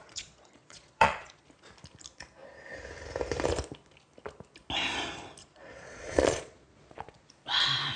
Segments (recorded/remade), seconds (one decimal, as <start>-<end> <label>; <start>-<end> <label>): 0.0-1.4 remade; 1.4-5.4 recorded; 5.4-7.3 remade; 7.3-8.0 recorded